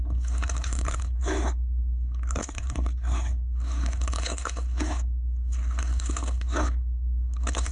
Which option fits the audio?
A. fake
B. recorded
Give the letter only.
A